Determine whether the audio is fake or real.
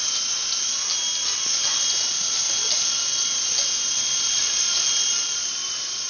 real